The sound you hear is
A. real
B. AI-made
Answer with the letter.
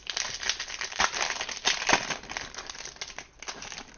A